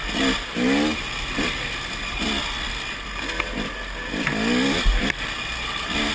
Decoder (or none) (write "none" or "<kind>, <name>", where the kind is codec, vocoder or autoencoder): none